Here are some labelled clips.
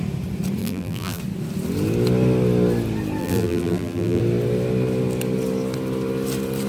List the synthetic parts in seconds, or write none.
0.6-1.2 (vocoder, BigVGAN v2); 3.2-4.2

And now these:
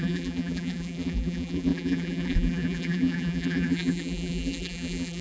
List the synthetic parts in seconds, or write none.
0.0-5.2 (vocoder, BigVGAN v2)